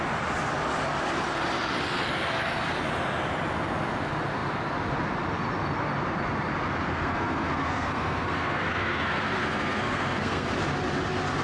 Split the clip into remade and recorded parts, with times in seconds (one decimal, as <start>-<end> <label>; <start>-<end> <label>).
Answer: 0.0-6.9 recorded; 6.9-10.5 remade; 10.5-11.4 recorded